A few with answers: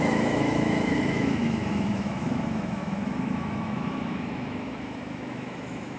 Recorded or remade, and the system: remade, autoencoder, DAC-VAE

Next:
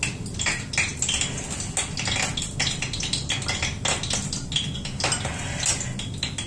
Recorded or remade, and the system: recorded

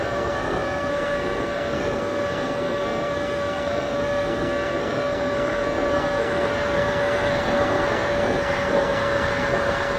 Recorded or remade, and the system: remade, codec, SNAC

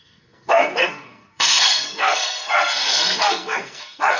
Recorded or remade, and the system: remade, codec, SNAC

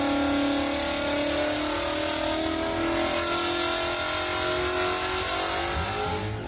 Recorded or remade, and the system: recorded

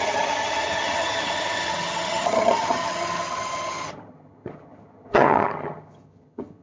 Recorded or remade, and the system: remade, vocoder, HiFi-GAN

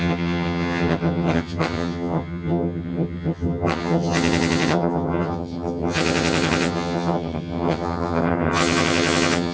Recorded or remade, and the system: remade, vocoder, HiFi-GAN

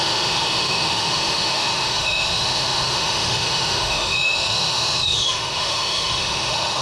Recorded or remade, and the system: remade, autoencoder, DAC-VAE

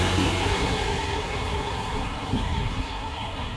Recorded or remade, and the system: remade, codec, SNAC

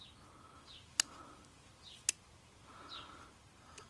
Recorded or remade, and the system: recorded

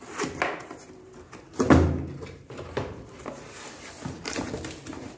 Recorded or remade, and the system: recorded